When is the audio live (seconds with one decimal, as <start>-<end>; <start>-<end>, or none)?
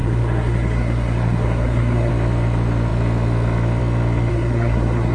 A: 2.1-4.3